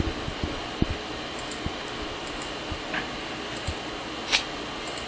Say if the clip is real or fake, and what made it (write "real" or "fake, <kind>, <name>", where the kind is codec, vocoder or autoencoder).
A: real